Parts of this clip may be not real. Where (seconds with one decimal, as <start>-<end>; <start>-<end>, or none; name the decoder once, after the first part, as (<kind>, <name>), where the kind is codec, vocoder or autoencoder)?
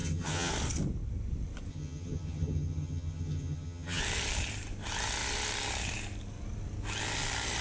0.0-0.5 (vocoder, HiFi-GAN); 1.7-4.0